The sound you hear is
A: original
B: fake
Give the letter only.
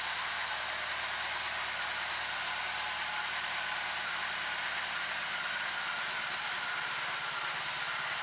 A